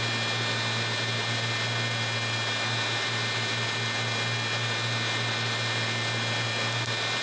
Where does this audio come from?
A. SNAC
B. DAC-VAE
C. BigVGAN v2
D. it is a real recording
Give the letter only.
D